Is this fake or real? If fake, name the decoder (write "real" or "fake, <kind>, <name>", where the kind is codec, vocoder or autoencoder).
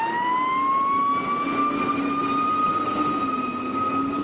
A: real